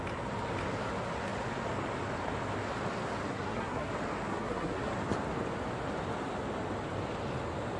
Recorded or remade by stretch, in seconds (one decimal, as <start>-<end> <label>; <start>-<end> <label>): 0.0-3.3 recorded; 3.3-3.9 remade; 3.9-4.3 recorded; 4.3-4.9 remade; 4.9-7.8 recorded